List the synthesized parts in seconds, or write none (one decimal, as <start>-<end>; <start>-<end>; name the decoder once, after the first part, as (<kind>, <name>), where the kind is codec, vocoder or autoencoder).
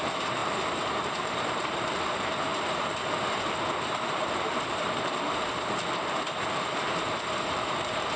0.0-8.2 (vocoder, BigVGAN v2)